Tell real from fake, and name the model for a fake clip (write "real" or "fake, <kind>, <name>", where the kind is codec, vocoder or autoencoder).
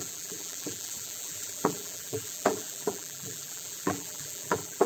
fake, vocoder, BigVGAN v2